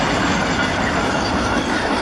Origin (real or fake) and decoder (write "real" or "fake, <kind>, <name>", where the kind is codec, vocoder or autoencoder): fake, vocoder, BigVGAN v2